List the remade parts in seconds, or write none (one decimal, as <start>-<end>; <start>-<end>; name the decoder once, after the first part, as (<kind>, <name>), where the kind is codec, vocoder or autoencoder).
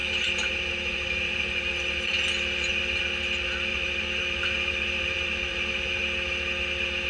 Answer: 0.0-3.0 (vocoder, BigVGAN v2); 3.7-6.0